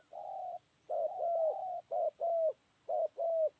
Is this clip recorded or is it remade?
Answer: recorded